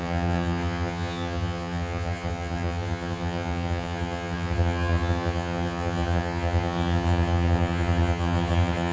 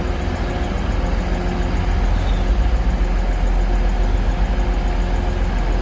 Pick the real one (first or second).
second